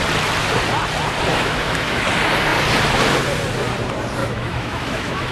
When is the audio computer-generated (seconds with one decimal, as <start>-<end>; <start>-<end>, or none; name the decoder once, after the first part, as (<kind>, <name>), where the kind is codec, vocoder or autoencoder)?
1.3-2.0 (autoencoder, DAC-VAE); 4.2-5.3